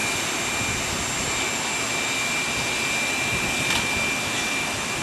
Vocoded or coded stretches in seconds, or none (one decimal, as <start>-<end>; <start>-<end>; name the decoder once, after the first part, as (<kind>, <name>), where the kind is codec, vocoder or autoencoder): none

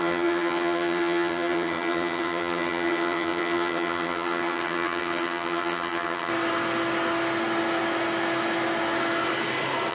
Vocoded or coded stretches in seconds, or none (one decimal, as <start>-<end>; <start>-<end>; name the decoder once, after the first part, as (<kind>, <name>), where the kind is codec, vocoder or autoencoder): 0.0-6.3 (vocoder, HiFi-GAN)